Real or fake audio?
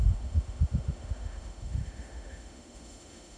fake